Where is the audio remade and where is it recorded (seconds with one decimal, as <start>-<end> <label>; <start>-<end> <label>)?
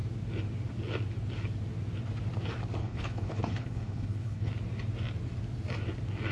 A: 0.0-2.8 recorded; 2.8-4.5 remade; 4.5-6.3 recorded